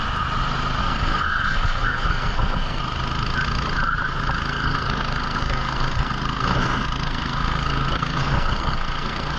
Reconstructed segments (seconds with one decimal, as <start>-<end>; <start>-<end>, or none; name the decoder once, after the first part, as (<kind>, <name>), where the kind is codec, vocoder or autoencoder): 0.8-2.8 (codec, SNAC); 4.5-9.4